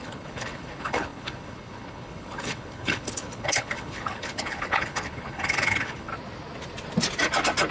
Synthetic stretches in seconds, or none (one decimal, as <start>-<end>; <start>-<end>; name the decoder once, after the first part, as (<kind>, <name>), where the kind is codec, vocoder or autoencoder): 0.0-6.1 (codec, HILCodec)